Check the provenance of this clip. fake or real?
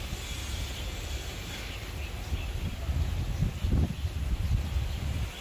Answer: real